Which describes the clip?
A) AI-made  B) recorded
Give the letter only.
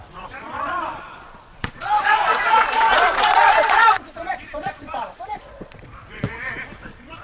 A